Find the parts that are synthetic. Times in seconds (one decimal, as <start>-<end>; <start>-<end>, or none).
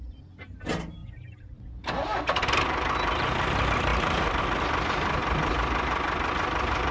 1.0-1.6; 3.9-4.4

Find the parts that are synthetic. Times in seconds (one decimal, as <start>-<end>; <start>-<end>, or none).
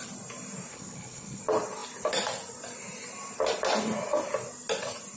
0.7-1.4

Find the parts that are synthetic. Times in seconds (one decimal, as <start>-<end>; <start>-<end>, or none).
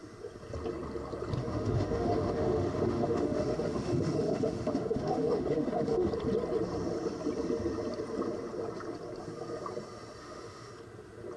1.4-6.1; 10.2-10.7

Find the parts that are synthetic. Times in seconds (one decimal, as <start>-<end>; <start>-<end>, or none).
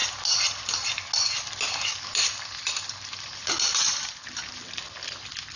none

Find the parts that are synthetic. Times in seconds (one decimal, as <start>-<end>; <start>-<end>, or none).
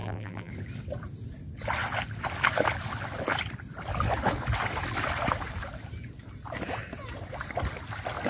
0.0-0.5